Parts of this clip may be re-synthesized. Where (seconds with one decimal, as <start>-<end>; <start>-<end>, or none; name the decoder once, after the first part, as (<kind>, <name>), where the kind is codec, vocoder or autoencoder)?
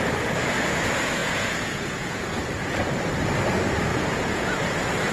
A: 1.2-2.4 (vocoder, Vocos); 3.9-4.6